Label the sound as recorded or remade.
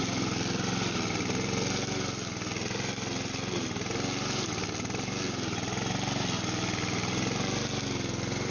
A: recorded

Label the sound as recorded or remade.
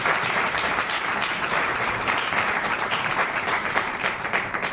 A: remade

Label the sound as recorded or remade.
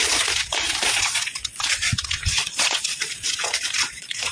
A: remade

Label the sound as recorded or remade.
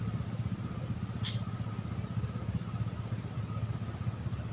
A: recorded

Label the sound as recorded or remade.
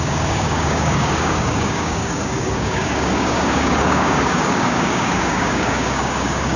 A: remade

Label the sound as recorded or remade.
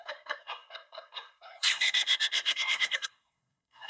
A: remade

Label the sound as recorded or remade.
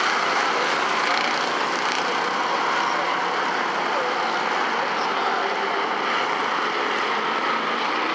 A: recorded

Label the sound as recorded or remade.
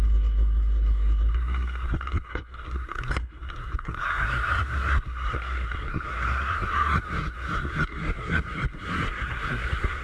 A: remade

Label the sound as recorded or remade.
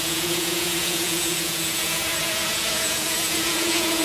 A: remade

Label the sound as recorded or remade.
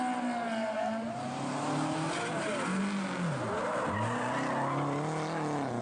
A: recorded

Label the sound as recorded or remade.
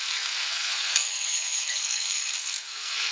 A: remade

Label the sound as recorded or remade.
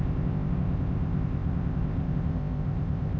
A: remade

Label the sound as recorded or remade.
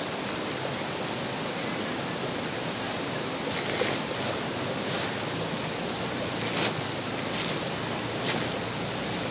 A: recorded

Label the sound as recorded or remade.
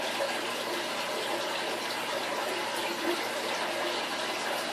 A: recorded